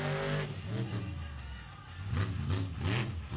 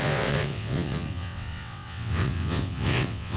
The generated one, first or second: second